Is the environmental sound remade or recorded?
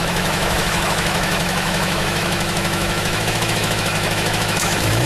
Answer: remade